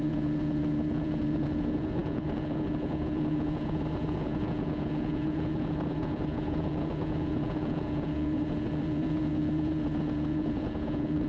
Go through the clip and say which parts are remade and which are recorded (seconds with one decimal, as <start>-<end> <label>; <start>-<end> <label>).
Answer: 0.0-11.3 remade